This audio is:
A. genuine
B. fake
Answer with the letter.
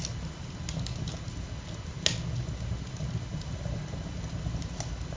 A